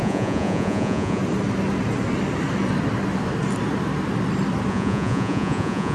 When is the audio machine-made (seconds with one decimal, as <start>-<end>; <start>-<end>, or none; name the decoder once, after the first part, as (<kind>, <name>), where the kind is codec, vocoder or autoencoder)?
0.0-1.2 (vocoder, Vocos); 4.7-5.9